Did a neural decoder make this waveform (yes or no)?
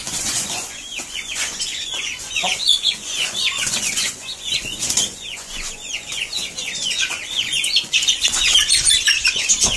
yes